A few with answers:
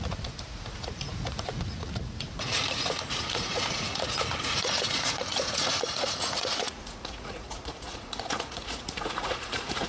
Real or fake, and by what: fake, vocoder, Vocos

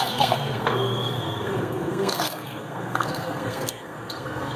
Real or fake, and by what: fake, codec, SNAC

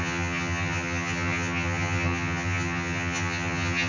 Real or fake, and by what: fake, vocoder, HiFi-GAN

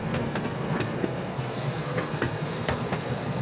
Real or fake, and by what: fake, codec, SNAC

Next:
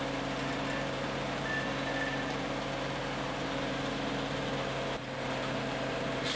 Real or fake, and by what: real